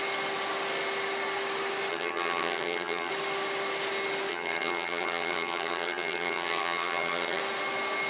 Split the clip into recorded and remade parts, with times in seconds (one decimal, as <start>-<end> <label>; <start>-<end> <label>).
0.0-1.9 recorded; 1.9-3.1 remade; 3.1-4.3 recorded; 4.3-7.4 remade; 7.4-8.1 recorded